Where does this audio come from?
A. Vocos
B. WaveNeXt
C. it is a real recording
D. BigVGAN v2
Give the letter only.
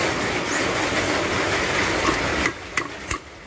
C